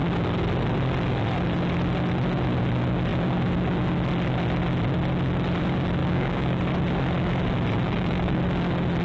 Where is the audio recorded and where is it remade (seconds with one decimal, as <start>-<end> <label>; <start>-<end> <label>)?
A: 0.0-6.0 recorded; 6.0-6.6 remade; 6.6-7.8 recorded; 7.8-8.4 remade; 8.4-9.0 recorded

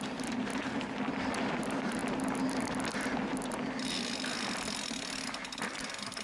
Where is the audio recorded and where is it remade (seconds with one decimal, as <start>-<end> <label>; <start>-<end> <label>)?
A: 0.0-6.2 recorded

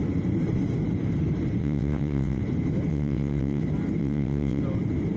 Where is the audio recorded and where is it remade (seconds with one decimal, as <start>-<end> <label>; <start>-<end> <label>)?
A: 0.0-1.6 recorded; 1.6-2.4 remade; 2.4-2.9 recorded; 2.9-3.6 remade; 3.6-4.0 recorded; 4.0-4.6 remade; 4.6-5.2 recorded

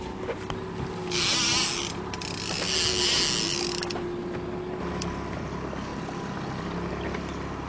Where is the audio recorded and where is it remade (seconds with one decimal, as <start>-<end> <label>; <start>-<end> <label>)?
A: 0.0-7.7 recorded

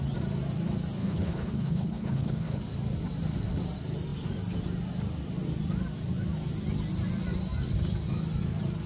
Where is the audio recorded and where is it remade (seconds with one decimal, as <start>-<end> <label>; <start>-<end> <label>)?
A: 0.0-1.0 recorded; 1.0-2.6 remade; 2.6-8.9 recorded

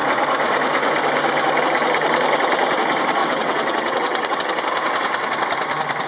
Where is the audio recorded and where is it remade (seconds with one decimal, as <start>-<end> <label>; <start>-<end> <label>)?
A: 0.0-3.2 recorded; 3.2-4.4 remade; 4.4-6.1 recorded

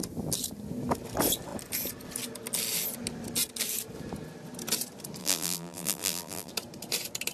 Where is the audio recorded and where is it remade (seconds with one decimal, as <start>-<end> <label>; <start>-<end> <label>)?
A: 0.0-5.2 recorded; 5.2-6.5 remade; 6.5-7.3 recorded